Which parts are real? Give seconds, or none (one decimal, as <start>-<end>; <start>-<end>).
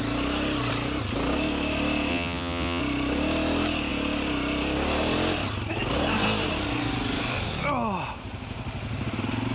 0.0-2.1; 2.8-9.5